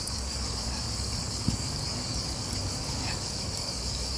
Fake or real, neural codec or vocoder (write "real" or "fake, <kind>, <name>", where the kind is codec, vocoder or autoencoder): fake, codec, DAC